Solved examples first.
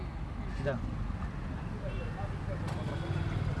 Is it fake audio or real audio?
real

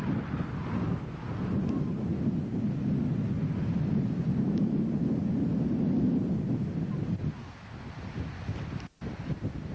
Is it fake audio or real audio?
real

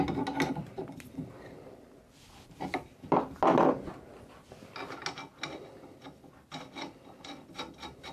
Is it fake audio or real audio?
real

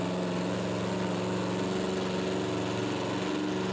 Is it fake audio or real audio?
real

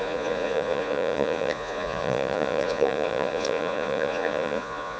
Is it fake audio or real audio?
fake